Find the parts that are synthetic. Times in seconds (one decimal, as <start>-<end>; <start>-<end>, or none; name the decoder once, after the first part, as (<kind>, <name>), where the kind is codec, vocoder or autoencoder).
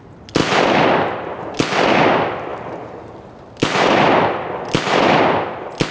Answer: none